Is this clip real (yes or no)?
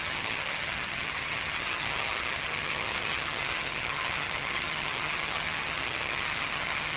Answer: no